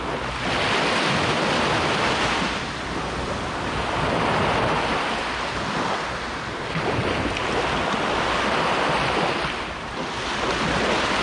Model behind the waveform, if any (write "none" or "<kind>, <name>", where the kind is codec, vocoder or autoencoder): none